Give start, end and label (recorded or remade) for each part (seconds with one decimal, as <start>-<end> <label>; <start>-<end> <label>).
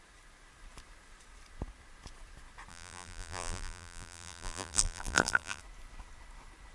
0.0-2.7 recorded; 2.7-5.6 remade; 5.6-6.7 recorded